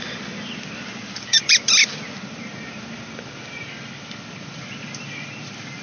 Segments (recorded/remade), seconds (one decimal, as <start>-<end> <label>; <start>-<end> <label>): 0.0-2.5 remade; 2.5-4.6 recorded; 4.6-5.8 remade